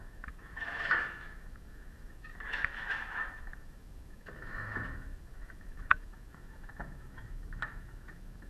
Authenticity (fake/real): fake